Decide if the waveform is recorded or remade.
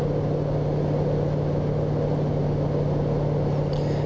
recorded